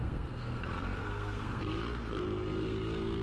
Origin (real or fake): fake